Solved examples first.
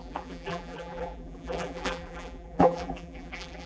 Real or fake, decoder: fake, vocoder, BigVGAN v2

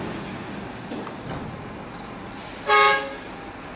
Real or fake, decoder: real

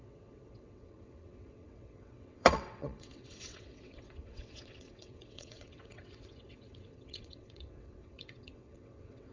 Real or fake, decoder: fake, vocoder, WaveNeXt